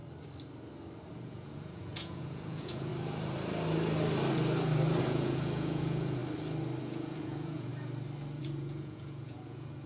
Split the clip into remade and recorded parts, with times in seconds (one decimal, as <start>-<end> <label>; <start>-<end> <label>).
0.0-1.1 recorded; 1.1-2.9 remade; 2.9-5.0 recorded; 5.0-6.2 remade; 6.2-6.8 recorded; 6.8-7.7 remade; 7.7-8.4 recorded; 8.4-9.9 remade